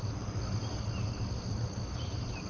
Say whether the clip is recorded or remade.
recorded